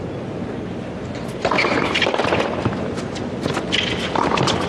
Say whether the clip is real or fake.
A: real